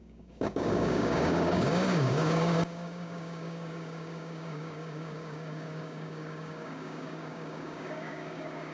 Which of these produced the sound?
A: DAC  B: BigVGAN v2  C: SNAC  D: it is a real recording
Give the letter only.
A